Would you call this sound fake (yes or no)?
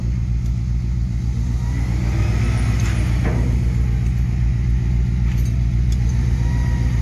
no